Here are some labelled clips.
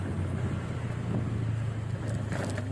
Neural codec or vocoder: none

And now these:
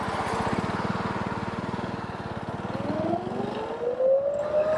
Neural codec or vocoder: none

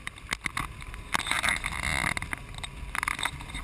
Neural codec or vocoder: none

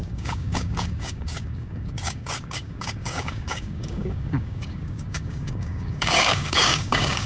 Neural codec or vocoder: codec, DAC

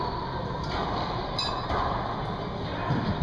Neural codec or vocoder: none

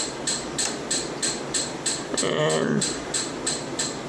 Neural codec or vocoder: none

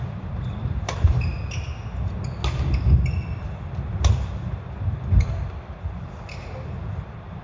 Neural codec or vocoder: none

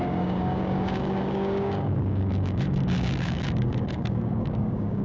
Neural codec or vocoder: codec, DAC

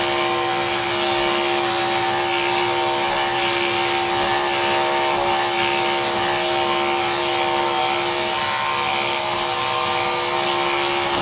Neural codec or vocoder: none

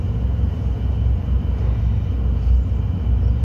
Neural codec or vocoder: none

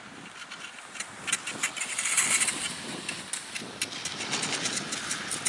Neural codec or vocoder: none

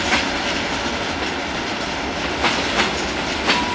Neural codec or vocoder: none